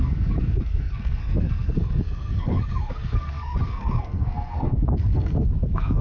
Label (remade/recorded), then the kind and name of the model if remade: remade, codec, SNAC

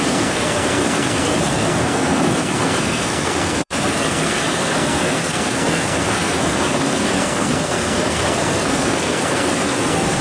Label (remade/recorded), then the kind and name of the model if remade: remade, codec, SNAC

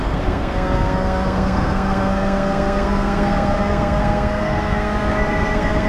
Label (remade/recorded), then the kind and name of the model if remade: remade, codec, SNAC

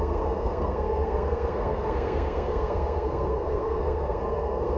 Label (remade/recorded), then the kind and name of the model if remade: remade, codec, SNAC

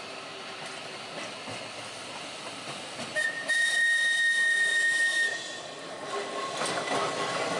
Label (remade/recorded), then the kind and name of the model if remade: recorded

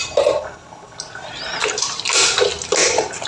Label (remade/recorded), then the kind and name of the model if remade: recorded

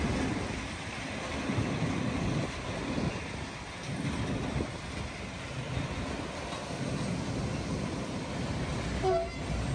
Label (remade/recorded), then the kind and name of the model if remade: recorded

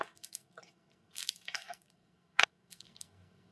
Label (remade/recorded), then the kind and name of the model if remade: remade, codec, SNAC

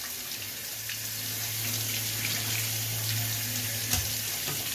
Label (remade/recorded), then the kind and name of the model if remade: recorded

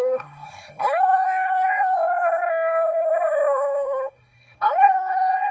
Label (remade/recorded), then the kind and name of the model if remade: remade, codec, SNAC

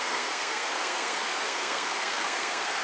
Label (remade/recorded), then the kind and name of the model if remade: remade, codec, SNAC